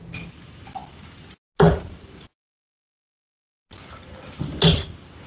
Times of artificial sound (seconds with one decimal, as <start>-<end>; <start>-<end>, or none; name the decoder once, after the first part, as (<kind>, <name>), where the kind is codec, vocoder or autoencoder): none